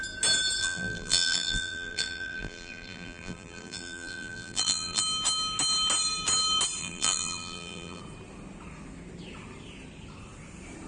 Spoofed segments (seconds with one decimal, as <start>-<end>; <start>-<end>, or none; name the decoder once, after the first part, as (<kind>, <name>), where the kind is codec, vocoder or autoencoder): 0.6-5.0 (vocoder, BigVGAN v2); 6.8-8.0